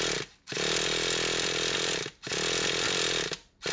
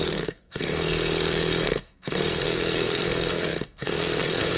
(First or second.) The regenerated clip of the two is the second